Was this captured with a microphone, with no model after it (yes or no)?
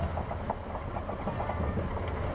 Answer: yes